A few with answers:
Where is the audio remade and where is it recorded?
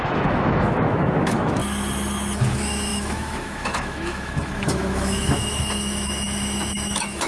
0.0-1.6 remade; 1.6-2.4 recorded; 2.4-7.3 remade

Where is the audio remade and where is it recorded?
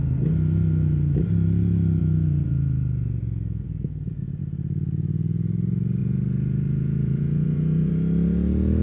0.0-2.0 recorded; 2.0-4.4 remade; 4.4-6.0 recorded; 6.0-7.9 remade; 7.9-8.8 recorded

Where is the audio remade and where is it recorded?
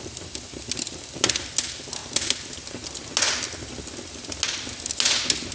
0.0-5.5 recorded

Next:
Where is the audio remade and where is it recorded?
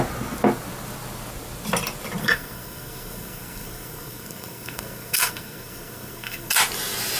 0.0-2.2 recorded; 2.2-6.5 remade; 6.5-7.2 recorded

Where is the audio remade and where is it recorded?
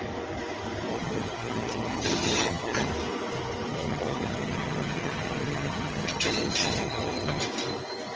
0.0-0.9 recorded; 0.9-2.9 remade; 2.9-3.7 recorded; 3.7-7.4 remade; 7.4-8.2 recorded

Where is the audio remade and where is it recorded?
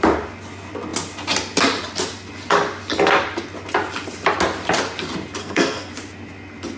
0.0-5.4 recorded; 5.4-5.9 remade; 5.9-6.8 recorded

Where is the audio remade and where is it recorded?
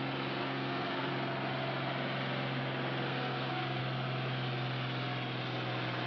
0.0-0.4 recorded; 0.4-1.1 remade; 1.1-3.1 recorded; 3.1-3.8 remade; 3.8-6.1 recorded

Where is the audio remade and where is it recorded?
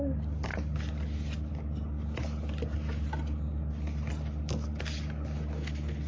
0.0-6.1 recorded